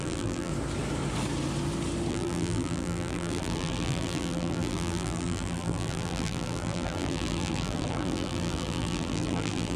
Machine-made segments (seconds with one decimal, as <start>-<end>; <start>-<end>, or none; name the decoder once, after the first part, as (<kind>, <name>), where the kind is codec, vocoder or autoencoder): 0.0-0.5 (vocoder, BigVGAN v2); 2.1-9.8